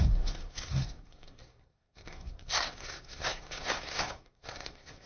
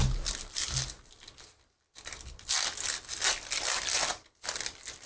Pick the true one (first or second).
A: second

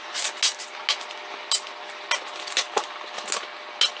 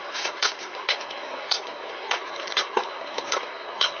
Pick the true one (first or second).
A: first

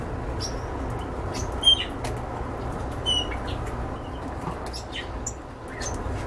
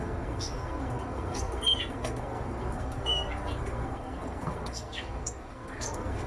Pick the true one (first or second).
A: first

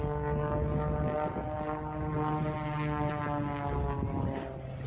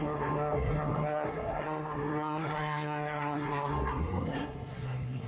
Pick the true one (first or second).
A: first